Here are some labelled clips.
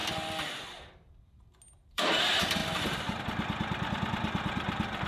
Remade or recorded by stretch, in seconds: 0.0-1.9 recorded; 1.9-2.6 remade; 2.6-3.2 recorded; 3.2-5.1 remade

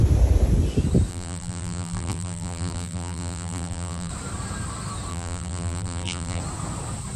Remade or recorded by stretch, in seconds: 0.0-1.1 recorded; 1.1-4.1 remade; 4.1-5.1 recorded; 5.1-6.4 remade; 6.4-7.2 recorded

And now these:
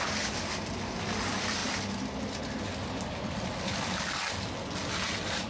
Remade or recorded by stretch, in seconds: 0.0-5.5 recorded

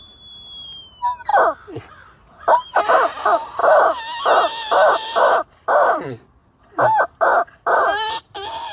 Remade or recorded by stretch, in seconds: 0.0-1.3 remade; 1.3-1.8 recorded; 1.8-3.6 remade; 3.6-4.2 recorded; 4.2-8.7 remade

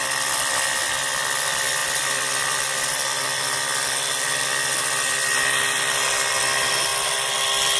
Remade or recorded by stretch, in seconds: 0.0-7.8 recorded

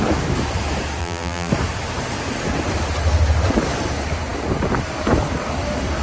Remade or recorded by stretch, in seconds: 0.0-1.0 recorded; 1.0-1.5 remade; 1.5-6.0 recorded